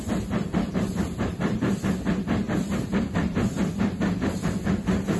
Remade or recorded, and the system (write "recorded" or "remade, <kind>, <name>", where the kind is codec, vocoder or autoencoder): recorded